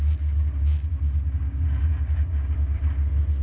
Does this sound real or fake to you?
real